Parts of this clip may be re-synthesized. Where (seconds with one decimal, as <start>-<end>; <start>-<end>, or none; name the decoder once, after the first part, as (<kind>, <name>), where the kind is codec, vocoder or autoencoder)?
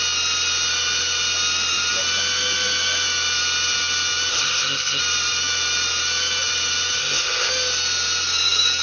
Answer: 4.3-5.0 (codec, SNAC); 7.0-7.5